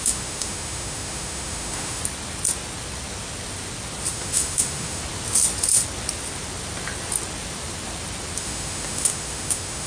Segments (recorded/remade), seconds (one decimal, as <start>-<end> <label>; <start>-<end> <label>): 0.0-2.0 remade; 2.0-4.1 recorded; 4.1-5.0 remade; 5.0-8.4 recorded; 8.4-9.9 remade